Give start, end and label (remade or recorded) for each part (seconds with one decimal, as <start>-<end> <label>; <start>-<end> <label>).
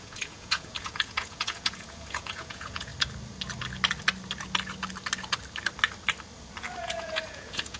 0.0-2.9 remade; 2.9-6.8 recorded; 6.8-7.8 remade